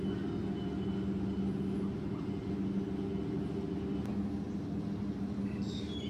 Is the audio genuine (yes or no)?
yes